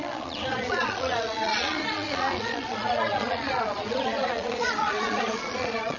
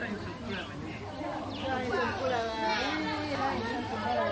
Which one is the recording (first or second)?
second